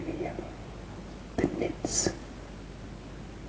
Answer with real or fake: real